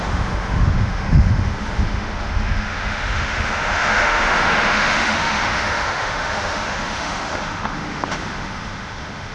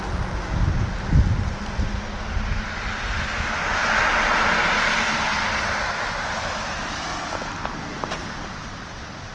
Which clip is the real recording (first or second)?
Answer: second